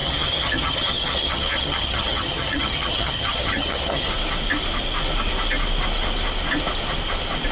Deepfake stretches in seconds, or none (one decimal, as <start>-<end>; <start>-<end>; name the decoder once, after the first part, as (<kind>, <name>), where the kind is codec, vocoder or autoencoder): 0.0-4.1 (vocoder, HiFi-GAN)